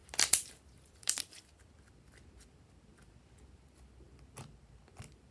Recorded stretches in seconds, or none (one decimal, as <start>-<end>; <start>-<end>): 1.7-5.3